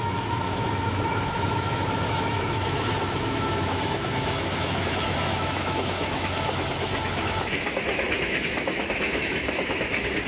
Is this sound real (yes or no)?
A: no